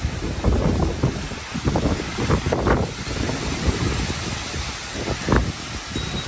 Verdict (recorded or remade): recorded